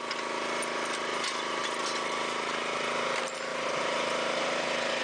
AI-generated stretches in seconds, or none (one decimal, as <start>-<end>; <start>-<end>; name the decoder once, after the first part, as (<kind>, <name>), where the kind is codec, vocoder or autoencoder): 1.1-2.6 (vocoder, BigVGAN v2); 3.5-5.0